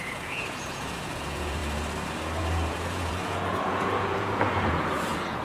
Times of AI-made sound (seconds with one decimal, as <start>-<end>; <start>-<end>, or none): 0.0-1.6; 2.4-5.4